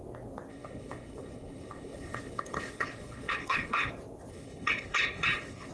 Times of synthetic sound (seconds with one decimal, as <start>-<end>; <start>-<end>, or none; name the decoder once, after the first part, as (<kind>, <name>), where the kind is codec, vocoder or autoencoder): 0.5-3.9 (codec, HILCodec); 4.3-5.7